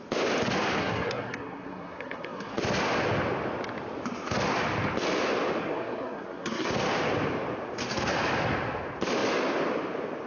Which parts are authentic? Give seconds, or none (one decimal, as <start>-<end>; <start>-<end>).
0.0-0.8; 2.5-5.6; 6.7-10.3